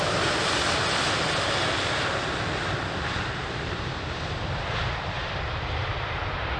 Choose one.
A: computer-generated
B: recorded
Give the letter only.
B